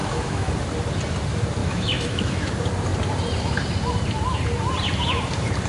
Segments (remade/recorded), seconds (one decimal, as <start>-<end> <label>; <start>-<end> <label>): 0.0-0.5 remade; 0.5-1.6 recorded; 1.6-2.5 remade; 2.5-5.7 recorded